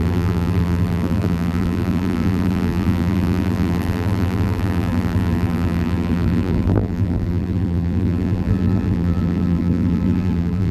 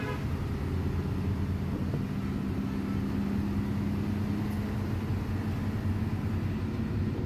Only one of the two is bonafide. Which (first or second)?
second